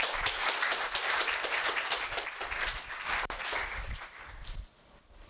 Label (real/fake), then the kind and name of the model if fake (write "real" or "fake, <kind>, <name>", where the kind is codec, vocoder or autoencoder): real